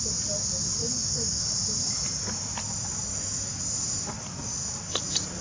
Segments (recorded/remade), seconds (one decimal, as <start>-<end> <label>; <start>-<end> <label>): 0.0-0.8 recorded; 0.8-1.4 remade; 1.4-3.1 recorded; 3.1-3.6 remade; 3.6-5.4 recorded